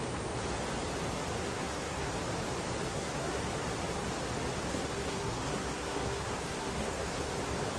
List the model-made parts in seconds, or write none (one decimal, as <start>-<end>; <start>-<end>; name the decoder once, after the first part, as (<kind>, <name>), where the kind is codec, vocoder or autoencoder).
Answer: 1.4-2.1 (codec, SNAC); 2.9-3.4; 4.7-7.3